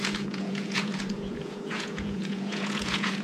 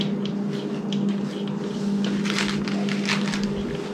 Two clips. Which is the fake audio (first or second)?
first